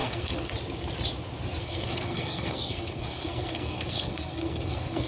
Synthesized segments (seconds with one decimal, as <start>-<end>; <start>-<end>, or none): 0.0-0.5; 1.6-5.1